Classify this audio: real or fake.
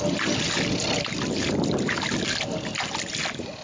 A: real